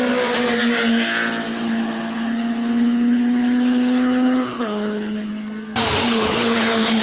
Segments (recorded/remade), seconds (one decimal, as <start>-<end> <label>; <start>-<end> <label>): 0.0-1.5 recorded; 1.5-5.3 remade; 5.3-6.0 recorded; 6.0-7.0 remade